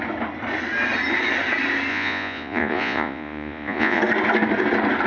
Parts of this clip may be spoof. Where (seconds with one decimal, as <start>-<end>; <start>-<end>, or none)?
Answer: 1.9-4.0